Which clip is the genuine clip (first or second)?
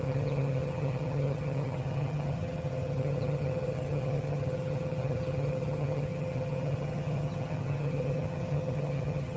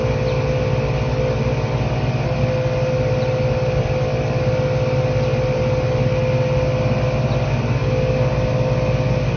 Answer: second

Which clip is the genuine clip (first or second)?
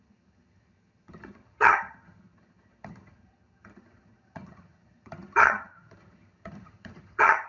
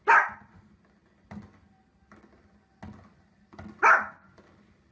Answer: second